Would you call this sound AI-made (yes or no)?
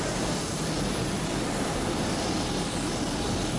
yes